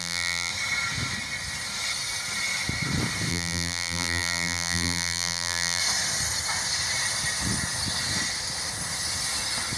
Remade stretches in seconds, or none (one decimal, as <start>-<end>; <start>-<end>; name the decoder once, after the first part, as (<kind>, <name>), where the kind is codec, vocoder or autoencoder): 0.0-0.5 (vocoder, BigVGAN v2); 3.3-5.8